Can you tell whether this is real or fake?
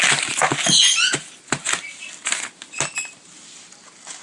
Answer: real